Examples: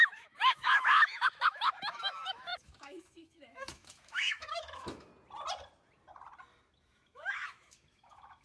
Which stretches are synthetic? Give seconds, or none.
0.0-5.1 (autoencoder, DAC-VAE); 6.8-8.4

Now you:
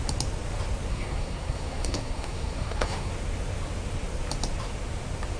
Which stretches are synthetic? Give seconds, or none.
0.9-3.1 (codec, SNAC)

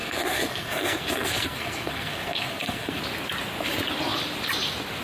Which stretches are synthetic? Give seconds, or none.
0.0-3.0 (codec, SNAC)